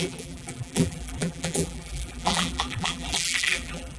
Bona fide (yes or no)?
no